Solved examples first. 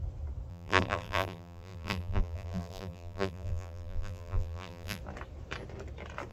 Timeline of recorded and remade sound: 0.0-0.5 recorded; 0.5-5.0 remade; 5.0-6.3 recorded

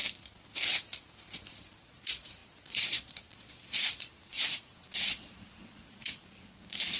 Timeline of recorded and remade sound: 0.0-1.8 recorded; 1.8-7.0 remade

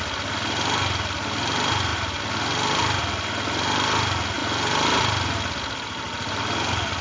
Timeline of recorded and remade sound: 0.0-7.0 recorded

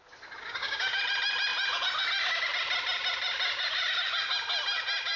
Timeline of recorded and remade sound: 0.0-0.4 recorded; 0.4-1.0 remade; 1.0-5.2 recorded

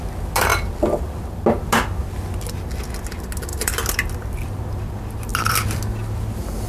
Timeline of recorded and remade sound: 0.0-3.5 recorded; 3.5-4.6 remade; 4.6-5.3 recorded; 5.3-5.8 remade; 5.8-6.7 recorded